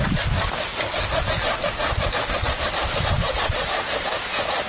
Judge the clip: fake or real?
real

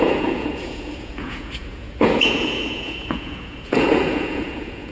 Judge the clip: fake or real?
fake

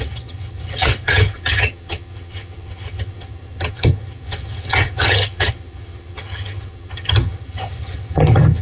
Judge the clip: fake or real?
fake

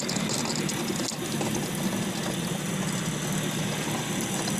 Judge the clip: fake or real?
real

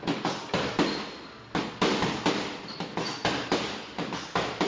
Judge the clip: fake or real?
real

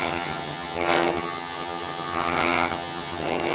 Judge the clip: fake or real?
fake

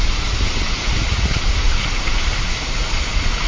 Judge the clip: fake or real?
fake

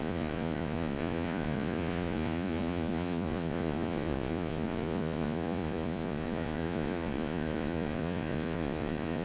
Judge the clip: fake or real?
fake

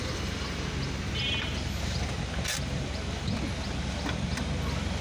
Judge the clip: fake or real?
real